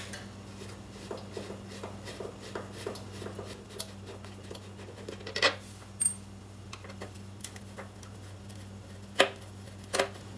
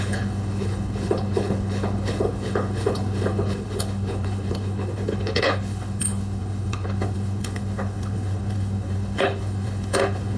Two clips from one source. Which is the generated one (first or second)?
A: second